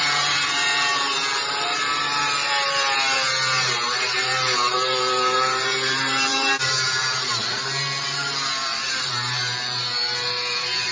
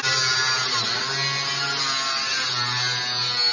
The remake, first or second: first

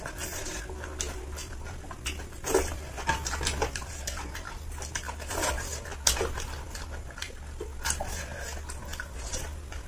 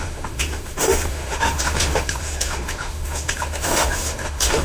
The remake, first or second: second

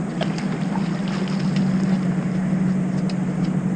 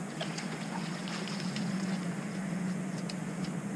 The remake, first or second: second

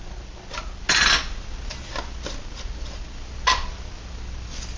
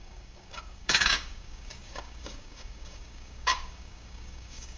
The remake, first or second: second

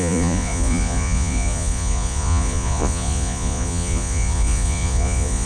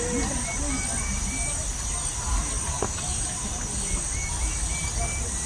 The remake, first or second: first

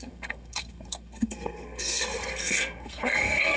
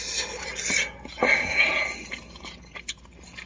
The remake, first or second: first